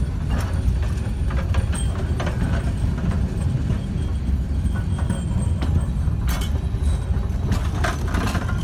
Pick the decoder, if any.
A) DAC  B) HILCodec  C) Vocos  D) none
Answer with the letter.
D